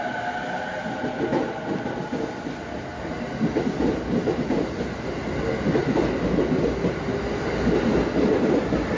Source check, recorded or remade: recorded